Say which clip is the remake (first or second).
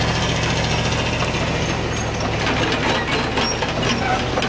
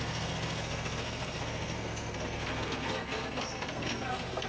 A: second